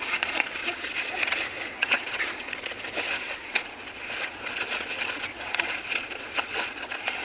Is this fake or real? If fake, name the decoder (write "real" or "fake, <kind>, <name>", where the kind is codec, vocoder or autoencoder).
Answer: fake, vocoder, Vocos